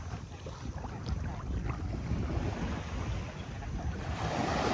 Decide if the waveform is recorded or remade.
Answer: recorded